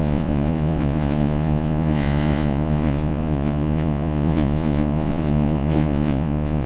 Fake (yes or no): yes